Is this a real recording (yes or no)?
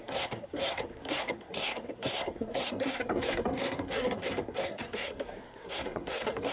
no